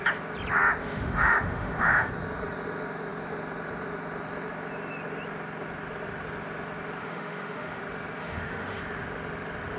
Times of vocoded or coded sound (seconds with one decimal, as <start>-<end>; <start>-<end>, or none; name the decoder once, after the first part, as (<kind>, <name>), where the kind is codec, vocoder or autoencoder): 0.8-2.1 (autoencoder, DAC-VAE); 7.0-7.8; 8.2-8.8

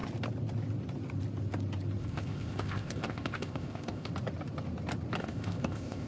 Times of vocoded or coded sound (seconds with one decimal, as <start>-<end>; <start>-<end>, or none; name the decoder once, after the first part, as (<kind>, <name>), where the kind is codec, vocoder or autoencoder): 2.0-4.1 (codec, ZipCodec); 5.2-6.1